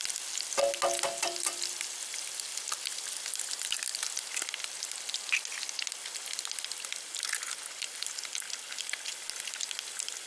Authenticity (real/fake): real